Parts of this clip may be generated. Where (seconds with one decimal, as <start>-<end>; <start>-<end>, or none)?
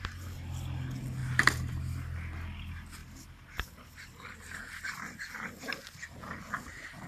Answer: 1.2-1.8